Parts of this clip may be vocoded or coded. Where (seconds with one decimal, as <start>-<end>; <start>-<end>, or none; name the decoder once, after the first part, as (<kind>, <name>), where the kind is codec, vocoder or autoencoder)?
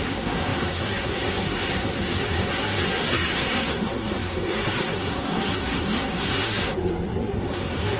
0.0-8.0 (codec, SNAC)